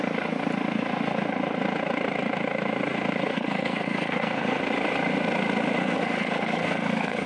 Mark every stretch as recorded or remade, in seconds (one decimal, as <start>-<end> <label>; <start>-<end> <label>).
0.0-3.3 recorded; 3.3-4.6 remade; 4.6-5.8 recorded; 5.8-7.3 remade